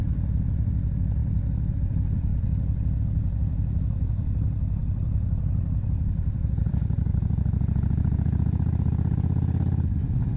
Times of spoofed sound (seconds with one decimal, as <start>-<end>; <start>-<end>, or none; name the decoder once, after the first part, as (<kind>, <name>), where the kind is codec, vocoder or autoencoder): 0.0-2.3 (vocoder, BigVGAN v2); 3.0-10.4